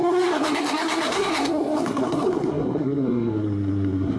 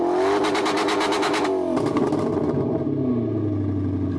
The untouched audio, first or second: second